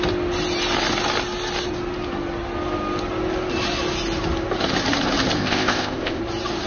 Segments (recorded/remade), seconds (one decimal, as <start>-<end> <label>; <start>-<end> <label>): 0.0-5.4 recorded; 5.4-6.2 remade; 6.2-6.7 recorded